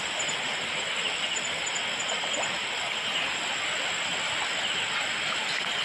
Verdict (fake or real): real